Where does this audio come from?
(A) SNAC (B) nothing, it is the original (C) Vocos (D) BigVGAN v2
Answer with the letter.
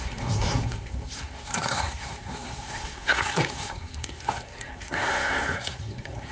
A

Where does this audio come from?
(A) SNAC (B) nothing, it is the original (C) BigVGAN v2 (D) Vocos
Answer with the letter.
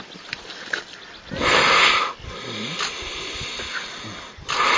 B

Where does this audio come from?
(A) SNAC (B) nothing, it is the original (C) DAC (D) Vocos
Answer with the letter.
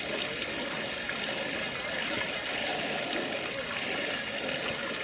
B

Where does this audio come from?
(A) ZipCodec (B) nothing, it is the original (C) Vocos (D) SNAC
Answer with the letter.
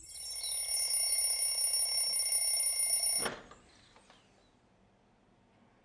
B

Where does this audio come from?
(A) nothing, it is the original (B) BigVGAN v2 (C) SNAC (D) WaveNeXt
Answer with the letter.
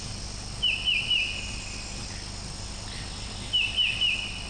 A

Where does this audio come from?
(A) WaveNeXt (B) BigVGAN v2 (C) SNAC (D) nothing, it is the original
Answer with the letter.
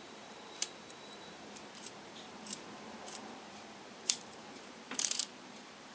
B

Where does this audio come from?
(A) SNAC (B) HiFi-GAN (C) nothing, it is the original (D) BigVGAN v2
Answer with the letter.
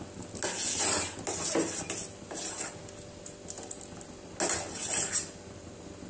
C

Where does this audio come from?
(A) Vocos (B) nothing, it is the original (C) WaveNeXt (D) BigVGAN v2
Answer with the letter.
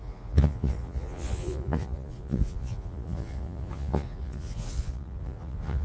A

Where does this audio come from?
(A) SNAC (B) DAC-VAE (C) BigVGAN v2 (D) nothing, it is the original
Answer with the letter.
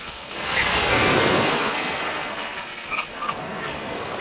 A